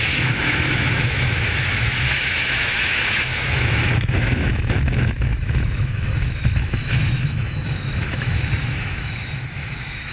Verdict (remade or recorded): remade